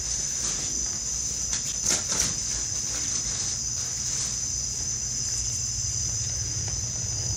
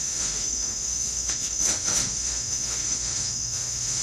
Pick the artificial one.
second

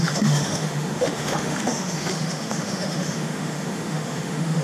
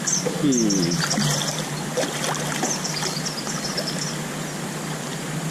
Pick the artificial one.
first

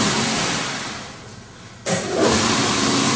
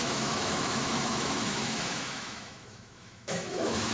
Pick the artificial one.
second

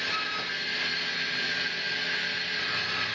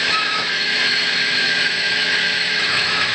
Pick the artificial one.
second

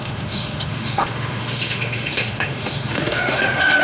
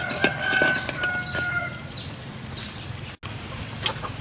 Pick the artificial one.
first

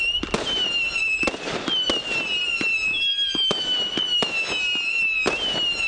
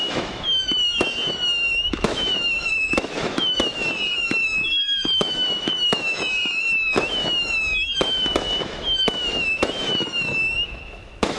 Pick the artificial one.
second